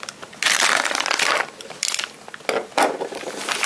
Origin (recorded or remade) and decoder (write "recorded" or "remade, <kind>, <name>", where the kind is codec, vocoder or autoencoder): recorded